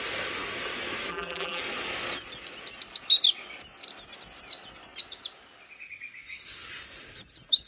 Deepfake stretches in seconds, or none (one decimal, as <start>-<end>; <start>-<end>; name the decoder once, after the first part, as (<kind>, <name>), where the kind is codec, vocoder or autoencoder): 1.1-1.6 (vocoder, BigVGAN v2)

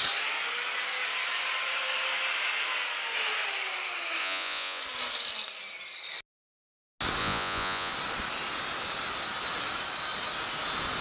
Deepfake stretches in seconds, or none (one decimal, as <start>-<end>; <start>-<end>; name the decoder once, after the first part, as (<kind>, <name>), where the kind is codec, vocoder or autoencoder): 4.2-4.8 (vocoder, Vocos); 7.2-7.9

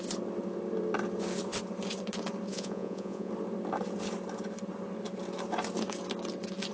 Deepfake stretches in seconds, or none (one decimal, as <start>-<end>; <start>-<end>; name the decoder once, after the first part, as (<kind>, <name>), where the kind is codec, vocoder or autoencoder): 2.5-3.3 (vocoder, Vocos)

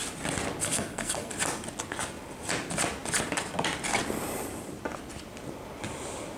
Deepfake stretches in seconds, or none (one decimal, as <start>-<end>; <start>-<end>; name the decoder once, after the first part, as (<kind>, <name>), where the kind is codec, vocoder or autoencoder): 0.6-1.3 (codec, SNAC)

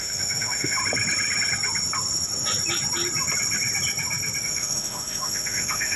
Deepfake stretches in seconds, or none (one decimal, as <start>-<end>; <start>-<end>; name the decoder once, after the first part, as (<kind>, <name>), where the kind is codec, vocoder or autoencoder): 0.0-0.8 (autoencoder, DAC-VAE); 4.4-6.0

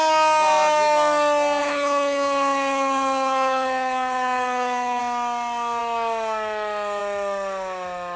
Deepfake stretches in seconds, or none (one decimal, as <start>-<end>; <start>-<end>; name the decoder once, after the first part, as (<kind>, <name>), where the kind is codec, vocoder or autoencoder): 1.6-5.0 (codec, HILCodec)

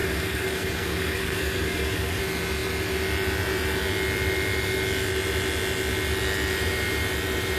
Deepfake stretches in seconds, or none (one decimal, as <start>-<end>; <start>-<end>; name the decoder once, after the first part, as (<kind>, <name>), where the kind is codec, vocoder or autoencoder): 0.0-2.2 (codec, SNAC)